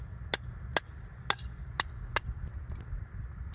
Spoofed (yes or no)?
no